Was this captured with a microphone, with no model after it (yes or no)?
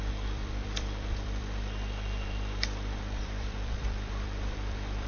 no